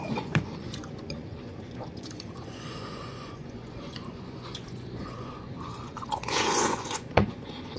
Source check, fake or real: fake